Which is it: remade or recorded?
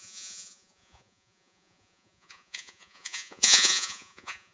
remade